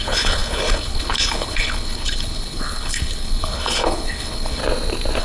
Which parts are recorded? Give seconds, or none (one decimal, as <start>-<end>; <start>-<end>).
4.6-5.2